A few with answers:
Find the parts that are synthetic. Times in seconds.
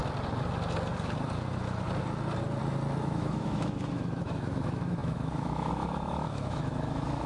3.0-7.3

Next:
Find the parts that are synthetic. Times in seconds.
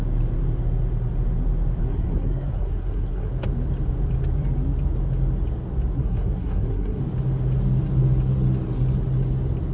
1.9-3.3; 6.0-7.0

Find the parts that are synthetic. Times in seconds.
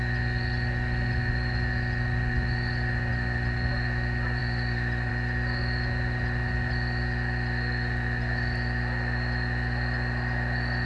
4.4-5.1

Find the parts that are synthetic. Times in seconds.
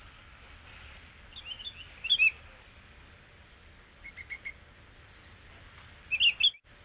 none